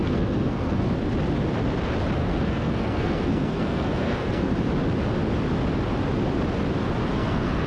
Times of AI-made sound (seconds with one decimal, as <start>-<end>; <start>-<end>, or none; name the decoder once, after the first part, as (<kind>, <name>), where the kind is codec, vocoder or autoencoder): 0.0-0.9 (codec, SNAC); 2.2-4.5; 7.1-7.7